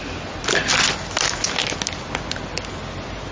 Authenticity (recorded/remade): recorded